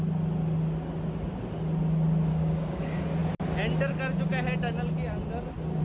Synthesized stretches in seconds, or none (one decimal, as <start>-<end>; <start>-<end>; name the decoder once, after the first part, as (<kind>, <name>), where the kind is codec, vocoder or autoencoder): 2.3-2.8 (codec, DAC)